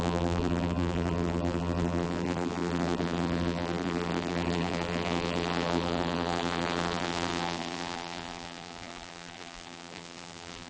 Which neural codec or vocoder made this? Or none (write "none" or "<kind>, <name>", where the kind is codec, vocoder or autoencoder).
vocoder, BigVGAN v2